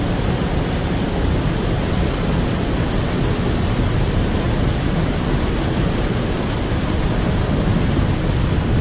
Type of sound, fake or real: real